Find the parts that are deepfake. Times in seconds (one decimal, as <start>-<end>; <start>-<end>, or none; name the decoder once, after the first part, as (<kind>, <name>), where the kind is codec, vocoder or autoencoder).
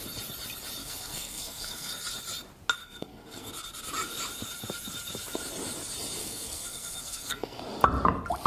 0.8-1.9 (codec, SNAC); 2.8-3.5; 6.2-7.6